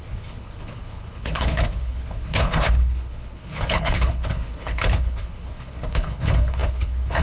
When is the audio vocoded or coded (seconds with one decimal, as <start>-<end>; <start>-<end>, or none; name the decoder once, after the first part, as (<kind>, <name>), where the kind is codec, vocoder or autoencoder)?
0.0-7.2 (codec, HILCodec)